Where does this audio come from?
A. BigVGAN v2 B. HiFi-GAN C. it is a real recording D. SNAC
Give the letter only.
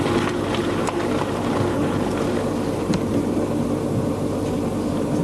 C